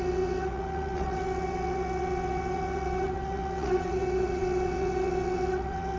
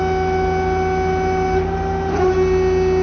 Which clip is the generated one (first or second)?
first